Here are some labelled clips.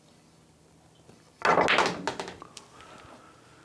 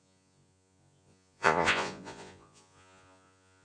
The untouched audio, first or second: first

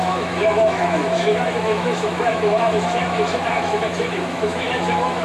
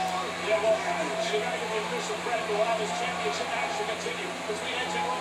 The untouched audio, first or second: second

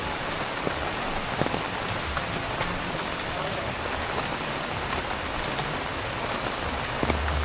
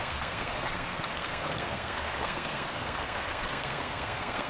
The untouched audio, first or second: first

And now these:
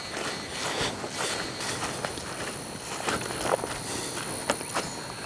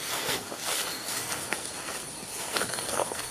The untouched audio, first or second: first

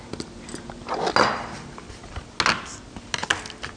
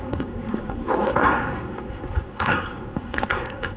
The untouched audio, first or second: first